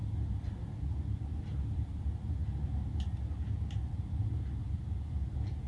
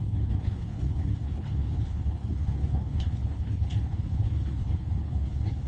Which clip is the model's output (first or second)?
second